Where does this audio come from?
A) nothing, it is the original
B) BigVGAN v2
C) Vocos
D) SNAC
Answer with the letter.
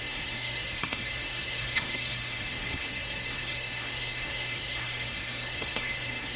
D